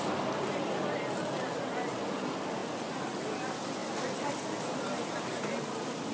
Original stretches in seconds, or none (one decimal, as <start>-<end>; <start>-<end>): 0.0-6.1